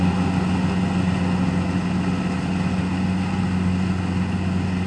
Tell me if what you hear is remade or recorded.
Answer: recorded